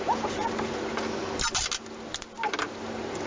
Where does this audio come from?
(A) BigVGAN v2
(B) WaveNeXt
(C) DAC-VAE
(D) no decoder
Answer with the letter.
D